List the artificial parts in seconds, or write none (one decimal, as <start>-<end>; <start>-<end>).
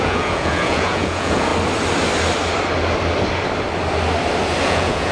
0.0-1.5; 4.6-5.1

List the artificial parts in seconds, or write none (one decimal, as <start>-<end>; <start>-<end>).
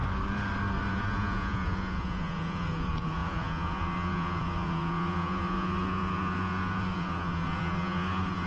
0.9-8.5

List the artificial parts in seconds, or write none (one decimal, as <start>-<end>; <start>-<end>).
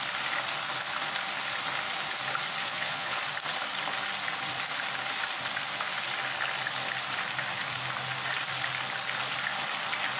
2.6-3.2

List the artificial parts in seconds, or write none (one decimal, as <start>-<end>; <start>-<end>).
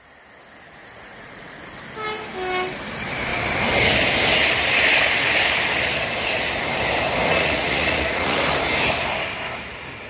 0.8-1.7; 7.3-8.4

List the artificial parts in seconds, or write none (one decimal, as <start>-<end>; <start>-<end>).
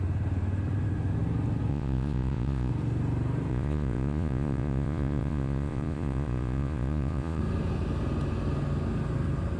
1.7-2.7; 3.5-7.4